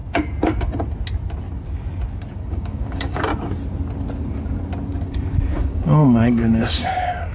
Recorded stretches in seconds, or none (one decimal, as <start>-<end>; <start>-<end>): 0.0-2.5; 3.3-5.6